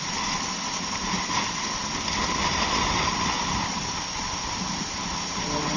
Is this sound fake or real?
real